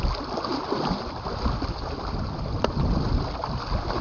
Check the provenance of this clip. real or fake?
real